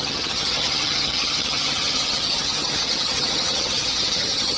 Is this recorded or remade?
remade